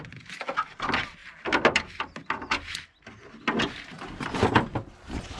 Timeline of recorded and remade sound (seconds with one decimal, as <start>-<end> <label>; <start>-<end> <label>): 0.0-5.4 recorded